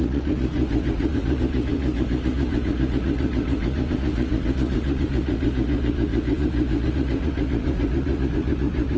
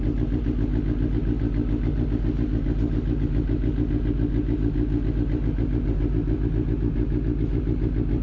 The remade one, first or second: first